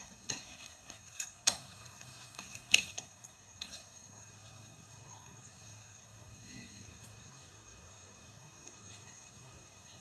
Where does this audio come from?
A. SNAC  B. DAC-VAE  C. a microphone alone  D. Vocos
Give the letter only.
A